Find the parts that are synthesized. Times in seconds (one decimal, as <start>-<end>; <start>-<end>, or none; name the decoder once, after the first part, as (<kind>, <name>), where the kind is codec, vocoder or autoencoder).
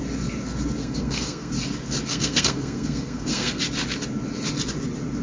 0.8-1.5 (codec, SNAC); 2.1-3.6